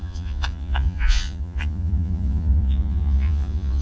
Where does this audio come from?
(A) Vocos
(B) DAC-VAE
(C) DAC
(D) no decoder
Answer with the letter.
A